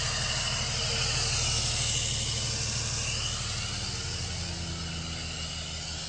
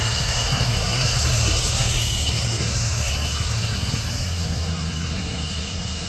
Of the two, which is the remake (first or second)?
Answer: second